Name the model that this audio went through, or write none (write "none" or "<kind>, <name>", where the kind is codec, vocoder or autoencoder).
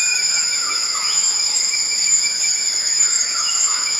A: autoencoder, DAC-VAE